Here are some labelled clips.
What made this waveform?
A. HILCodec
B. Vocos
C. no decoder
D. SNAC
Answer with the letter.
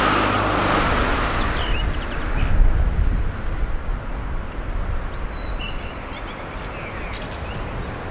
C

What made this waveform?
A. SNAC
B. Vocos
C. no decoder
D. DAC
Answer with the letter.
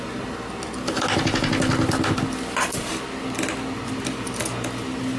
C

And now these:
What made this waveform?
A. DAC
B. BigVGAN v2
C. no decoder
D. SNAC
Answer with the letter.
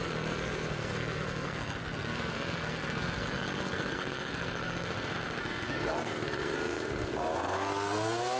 D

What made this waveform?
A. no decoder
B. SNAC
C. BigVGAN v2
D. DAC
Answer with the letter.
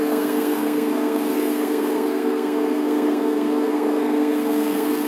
B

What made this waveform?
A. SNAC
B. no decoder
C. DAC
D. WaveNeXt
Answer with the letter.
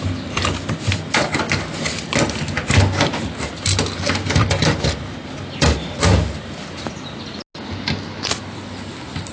B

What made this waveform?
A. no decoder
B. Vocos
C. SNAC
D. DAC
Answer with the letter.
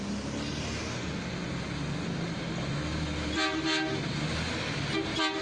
A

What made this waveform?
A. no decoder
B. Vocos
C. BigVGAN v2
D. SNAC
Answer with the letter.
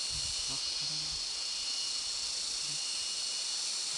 A